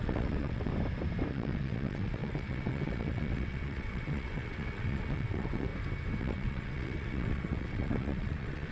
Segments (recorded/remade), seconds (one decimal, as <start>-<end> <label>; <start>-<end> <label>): 0.0-0.7 remade; 0.7-1.3 recorded; 1.3-5.7 remade; 5.7-6.2 recorded; 6.2-8.7 remade